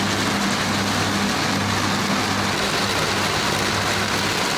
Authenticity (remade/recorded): recorded